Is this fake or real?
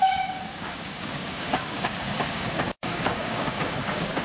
fake